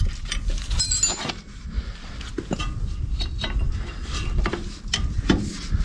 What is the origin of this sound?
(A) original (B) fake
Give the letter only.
A